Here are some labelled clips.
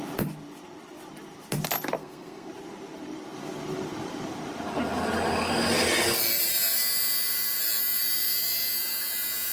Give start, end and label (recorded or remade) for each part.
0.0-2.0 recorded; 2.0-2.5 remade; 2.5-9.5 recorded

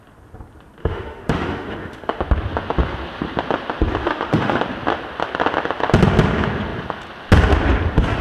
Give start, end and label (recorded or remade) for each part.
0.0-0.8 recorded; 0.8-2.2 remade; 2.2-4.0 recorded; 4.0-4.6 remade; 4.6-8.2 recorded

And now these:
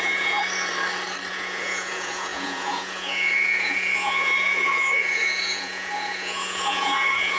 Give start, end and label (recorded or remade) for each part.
0.0-0.4 remade; 0.4-1.3 recorded; 1.3-7.4 remade

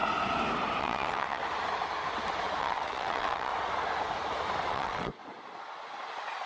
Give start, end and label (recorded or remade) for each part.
0.0-0.8 recorded; 0.8-1.4 remade; 1.4-2.6 recorded; 2.6-3.5 remade; 3.5-4.7 recorded; 4.7-5.2 remade; 5.2-6.5 recorded

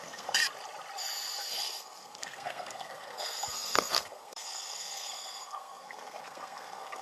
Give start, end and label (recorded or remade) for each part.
0.0-0.4 remade; 0.4-1.5 recorded; 1.5-7.0 remade

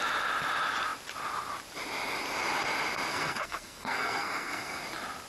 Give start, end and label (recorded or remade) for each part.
0.0-3.1 recorded; 3.1-4.8 remade; 4.8-5.3 recorded

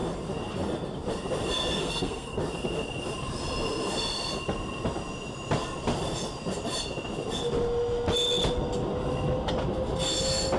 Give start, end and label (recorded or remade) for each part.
0.0-1.8 recorded; 1.8-2.4 remade; 2.4-10.6 recorded

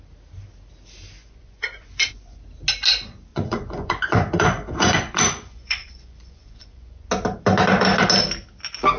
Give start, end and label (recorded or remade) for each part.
0.0-1.2 recorded; 1.2-2.4 remade; 2.4-3.3 recorded; 3.3-7.1 remade; 7.1-9.0 recorded